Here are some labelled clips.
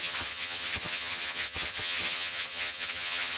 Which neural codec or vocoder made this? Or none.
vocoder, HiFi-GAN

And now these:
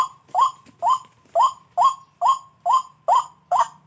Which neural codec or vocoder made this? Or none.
none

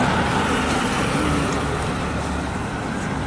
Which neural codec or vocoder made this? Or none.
none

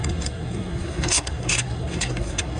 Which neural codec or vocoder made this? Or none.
codec, SNAC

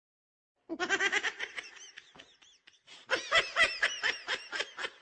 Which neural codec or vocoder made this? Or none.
none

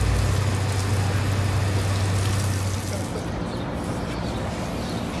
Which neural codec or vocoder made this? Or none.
none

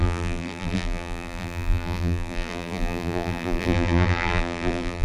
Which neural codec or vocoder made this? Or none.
vocoder, BigVGAN v2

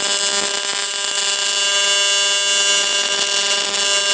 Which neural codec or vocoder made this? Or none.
none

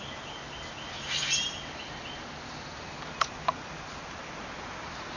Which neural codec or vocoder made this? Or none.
none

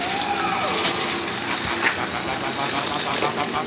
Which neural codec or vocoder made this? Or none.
none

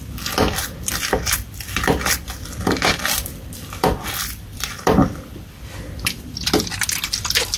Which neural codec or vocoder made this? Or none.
vocoder, BigVGAN v2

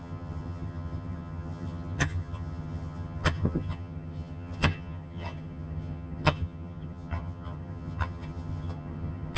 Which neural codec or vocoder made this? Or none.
vocoder, HiFi-GAN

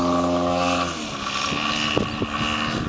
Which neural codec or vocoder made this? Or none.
none